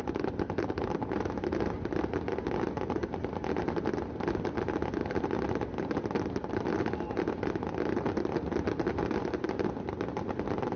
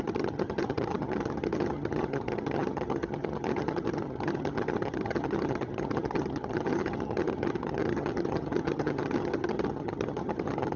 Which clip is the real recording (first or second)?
first